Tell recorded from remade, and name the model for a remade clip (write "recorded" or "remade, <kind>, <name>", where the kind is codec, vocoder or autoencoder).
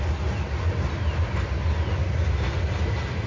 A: recorded